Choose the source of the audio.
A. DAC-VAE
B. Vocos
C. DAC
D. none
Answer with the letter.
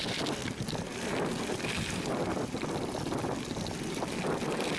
D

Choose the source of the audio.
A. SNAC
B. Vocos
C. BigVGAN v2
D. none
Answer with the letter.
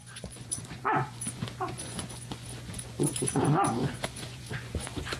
B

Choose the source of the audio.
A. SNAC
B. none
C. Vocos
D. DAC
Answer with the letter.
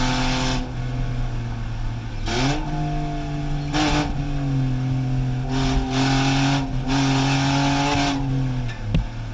B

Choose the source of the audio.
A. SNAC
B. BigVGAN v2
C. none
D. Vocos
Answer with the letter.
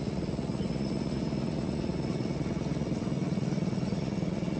D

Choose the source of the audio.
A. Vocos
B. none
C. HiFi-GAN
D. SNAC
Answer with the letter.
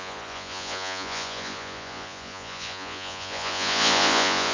A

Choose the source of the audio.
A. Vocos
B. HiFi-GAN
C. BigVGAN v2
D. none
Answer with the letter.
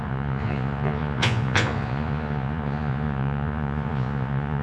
A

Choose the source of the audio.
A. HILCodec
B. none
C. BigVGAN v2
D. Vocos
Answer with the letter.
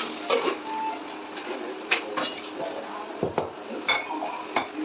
B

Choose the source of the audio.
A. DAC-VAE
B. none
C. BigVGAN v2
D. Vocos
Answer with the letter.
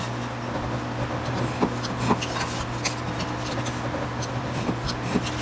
B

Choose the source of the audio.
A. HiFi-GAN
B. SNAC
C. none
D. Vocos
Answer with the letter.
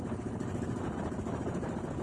C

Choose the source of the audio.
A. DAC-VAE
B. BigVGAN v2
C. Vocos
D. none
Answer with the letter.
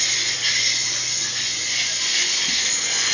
C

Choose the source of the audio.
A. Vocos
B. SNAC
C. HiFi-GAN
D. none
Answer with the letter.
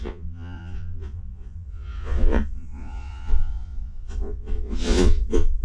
A